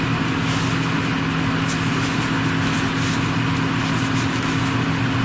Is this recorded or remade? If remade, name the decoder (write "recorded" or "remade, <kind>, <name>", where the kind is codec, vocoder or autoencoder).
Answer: recorded